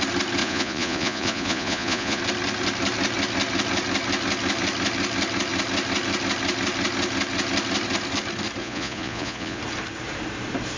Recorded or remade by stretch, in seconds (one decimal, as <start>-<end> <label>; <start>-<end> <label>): 0.0-0.4 recorded; 0.4-2.2 remade; 2.2-8.6 recorded; 8.6-9.6 remade; 9.6-10.8 recorded